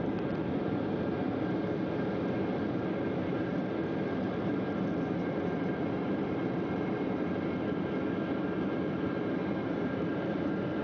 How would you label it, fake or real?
real